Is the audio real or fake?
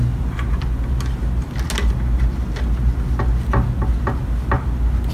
real